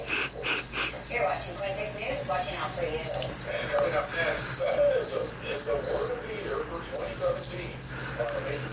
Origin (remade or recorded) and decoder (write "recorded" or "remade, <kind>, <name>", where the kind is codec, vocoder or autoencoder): recorded